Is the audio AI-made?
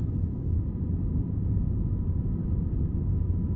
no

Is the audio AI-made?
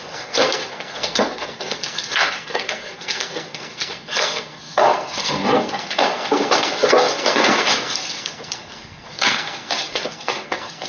yes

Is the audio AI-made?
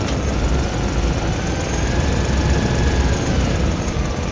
no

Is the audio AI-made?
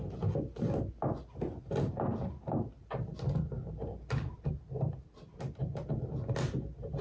no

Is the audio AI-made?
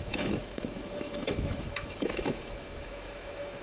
yes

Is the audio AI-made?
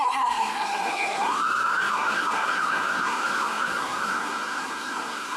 yes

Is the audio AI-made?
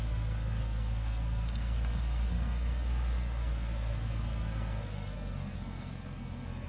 yes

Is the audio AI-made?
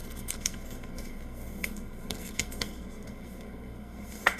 yes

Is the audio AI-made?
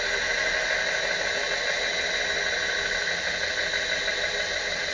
no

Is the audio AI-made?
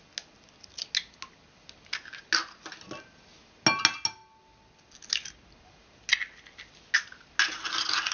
no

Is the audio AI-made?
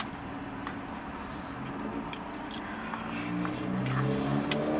no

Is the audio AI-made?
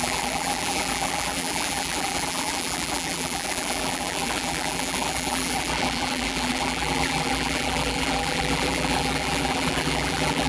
yes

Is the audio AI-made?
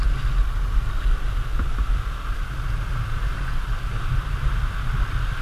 no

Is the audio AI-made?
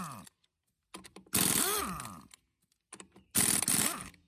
no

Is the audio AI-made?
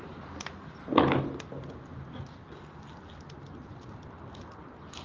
no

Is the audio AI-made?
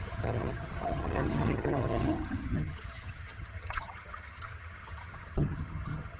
yes